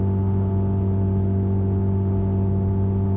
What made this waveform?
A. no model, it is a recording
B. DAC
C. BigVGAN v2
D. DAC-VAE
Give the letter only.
A